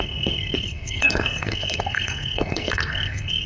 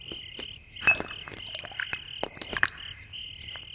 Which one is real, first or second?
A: second